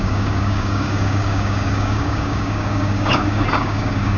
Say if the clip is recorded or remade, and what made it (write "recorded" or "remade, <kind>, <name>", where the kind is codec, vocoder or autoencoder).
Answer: remade, codec, DAC